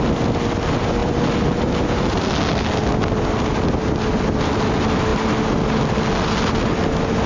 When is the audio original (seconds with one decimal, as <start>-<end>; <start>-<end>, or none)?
0.0-7.3